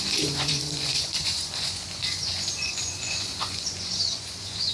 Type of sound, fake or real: fake